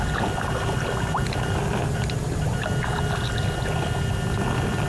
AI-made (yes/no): no